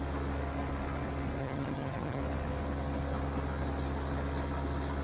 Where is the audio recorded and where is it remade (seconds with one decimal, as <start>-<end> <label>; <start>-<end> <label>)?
0.0-1.4 recorded; 1.4-2.2 remade; 2.2-5.0 recorded